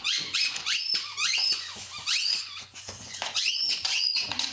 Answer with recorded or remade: remade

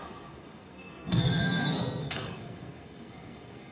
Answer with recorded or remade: remade